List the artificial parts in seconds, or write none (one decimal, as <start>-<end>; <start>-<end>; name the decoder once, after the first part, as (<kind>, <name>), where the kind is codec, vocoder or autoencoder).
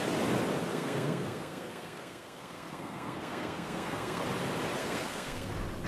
0.7-4.2 (codec, SNAC); 4.8-5.5